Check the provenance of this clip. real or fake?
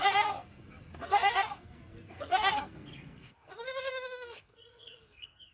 fake